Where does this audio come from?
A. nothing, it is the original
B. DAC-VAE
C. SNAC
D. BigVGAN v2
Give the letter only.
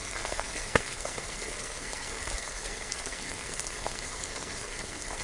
C